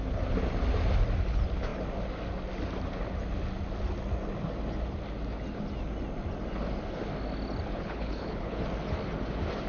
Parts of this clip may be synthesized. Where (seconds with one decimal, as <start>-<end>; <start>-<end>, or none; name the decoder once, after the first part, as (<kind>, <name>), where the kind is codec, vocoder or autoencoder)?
7.7-8.6 (codec, HILCodec)